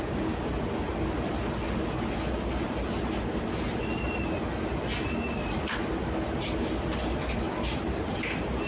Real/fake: real